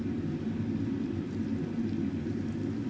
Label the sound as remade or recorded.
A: remade